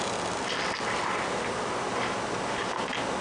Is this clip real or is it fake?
real